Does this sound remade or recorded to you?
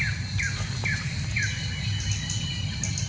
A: recorded